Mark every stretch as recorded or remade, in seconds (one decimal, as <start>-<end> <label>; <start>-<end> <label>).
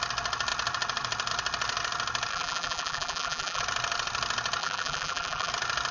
0.0-2.3 recorded; 2.3-3.6 remade; 3.6-4.6 recorded; 4.6-5.5 remade; 5.5-5.9 recorded